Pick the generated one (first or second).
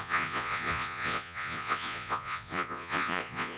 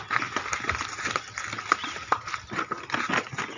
first